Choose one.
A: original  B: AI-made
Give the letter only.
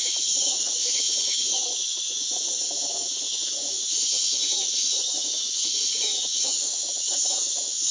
B